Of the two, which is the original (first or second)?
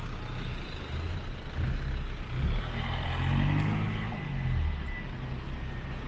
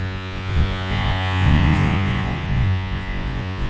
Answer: first